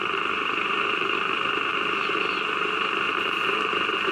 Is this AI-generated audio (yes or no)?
yes